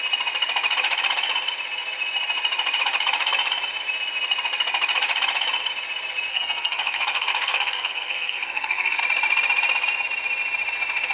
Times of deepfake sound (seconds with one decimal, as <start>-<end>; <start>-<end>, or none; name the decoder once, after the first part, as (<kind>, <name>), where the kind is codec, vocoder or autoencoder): 6.3-9.0 (codec, SNAC)